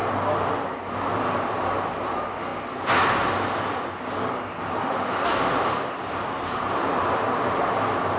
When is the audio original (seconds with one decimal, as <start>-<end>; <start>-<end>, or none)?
0.0-1.0; 2.5-4.6